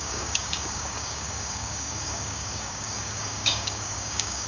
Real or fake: fake